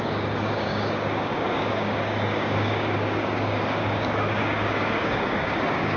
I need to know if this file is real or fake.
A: fake